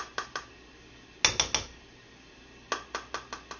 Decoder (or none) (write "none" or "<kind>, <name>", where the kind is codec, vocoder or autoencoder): none